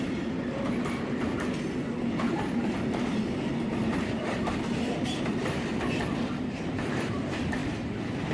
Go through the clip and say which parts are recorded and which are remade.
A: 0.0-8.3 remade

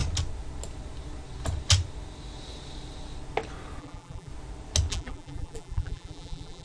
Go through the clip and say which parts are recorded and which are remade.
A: 0.0-3.8 recorded; 3.8-4.3 remade; 4.3-4.9 recorded; 4.9-6.6 remade

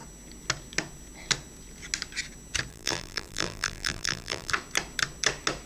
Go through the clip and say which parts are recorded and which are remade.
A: 0.0-2.7 recorded; 2.7-4.5 remade; 4.5-5.7 recorded